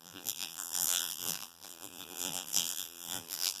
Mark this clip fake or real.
fake